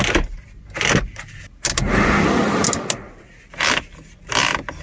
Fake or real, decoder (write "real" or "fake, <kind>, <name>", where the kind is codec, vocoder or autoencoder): real